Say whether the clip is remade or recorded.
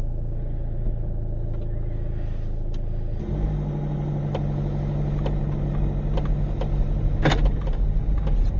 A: recorded